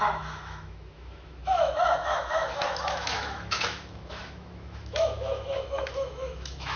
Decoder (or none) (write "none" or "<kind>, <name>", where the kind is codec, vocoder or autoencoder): autoencoder, DAC-VAE